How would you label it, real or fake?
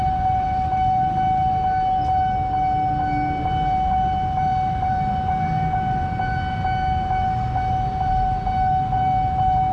real